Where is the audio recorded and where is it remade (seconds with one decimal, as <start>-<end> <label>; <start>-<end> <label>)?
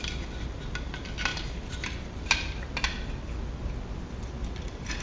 0.0-5.0 recorded